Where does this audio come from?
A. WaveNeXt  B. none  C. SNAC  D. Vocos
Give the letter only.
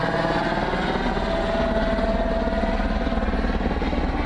B